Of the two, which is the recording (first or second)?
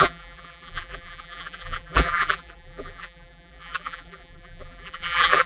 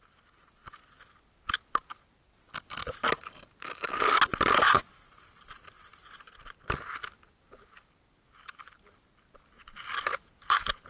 second